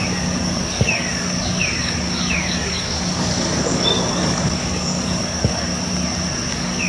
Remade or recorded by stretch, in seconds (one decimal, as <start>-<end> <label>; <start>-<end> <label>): 0.0-5.7 remade; 5.7-6.5 recorded; 6.5-6.9 remade